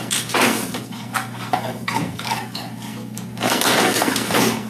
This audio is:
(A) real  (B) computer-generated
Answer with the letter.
B